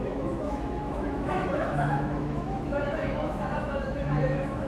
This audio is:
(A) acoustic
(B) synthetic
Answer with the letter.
B